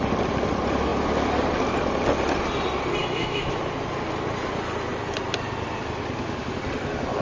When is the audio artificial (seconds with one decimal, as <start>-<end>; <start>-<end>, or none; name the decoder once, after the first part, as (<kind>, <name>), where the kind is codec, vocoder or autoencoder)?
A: 3.0-3.6 (autoencoder, DAC-VAE)